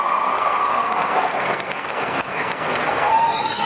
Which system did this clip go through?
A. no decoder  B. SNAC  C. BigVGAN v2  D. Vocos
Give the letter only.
B